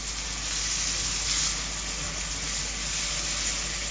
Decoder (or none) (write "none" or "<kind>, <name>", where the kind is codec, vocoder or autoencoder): none